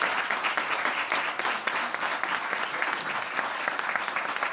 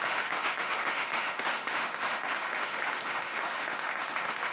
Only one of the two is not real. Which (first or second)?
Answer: second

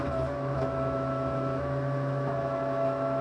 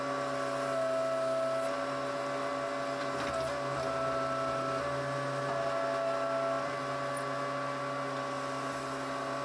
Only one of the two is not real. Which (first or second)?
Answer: first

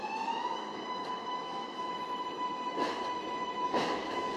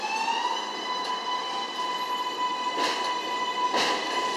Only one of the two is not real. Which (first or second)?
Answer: first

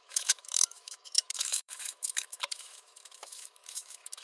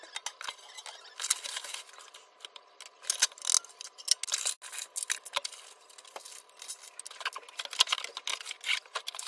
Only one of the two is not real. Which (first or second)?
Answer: first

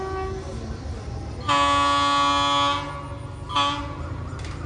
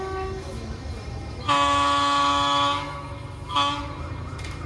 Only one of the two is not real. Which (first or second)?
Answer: second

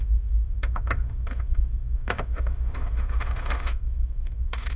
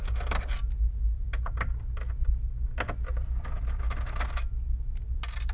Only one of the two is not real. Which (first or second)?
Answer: first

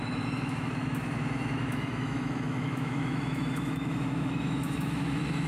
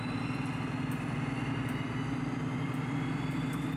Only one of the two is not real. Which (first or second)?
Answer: first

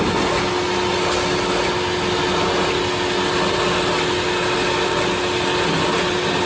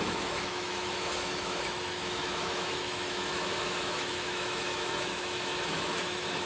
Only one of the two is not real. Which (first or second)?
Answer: second